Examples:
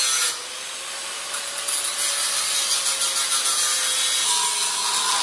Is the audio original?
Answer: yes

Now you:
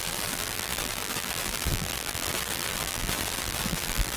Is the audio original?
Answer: no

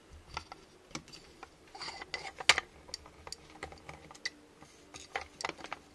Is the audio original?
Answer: yes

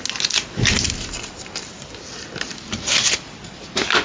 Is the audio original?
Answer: no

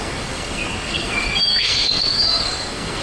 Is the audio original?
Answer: no